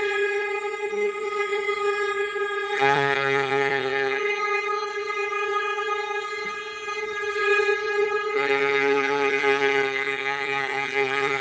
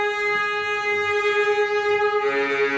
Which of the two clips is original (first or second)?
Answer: second